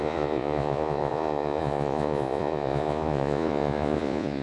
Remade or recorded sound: remade